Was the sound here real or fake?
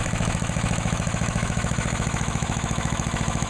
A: fake